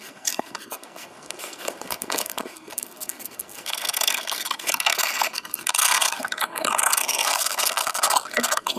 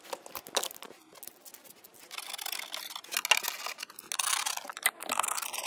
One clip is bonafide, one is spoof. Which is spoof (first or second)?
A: first